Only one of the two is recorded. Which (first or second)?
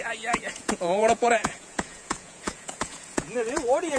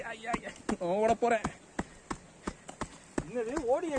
second